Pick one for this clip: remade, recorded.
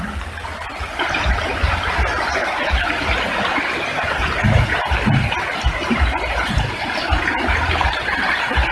remade